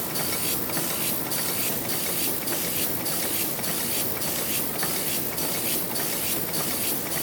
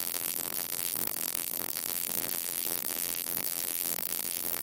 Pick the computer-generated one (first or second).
second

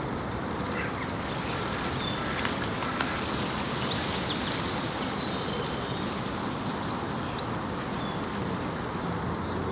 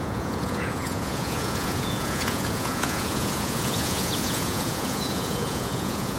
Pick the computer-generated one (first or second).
second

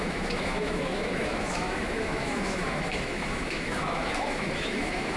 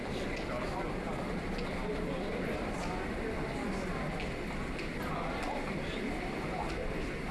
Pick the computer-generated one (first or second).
first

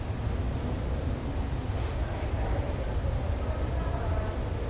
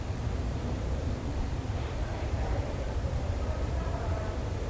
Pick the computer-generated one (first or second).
second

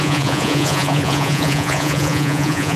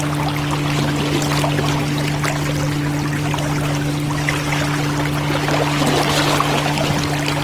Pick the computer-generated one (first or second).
first